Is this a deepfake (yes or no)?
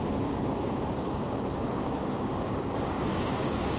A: yes